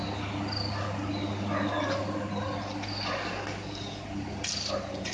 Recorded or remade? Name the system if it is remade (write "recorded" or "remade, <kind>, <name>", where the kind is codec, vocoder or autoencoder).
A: recorded